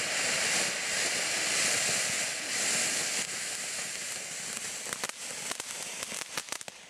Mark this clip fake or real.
real